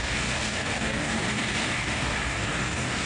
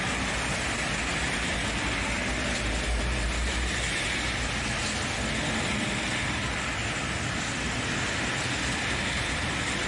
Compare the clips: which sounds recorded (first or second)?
second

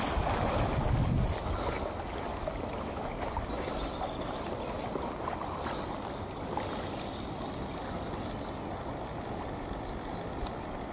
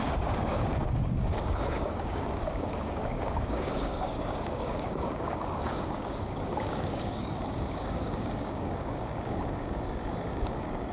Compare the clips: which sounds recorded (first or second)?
first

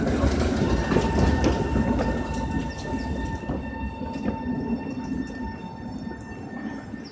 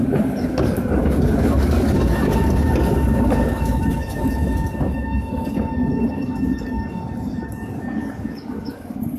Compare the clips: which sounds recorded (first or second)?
first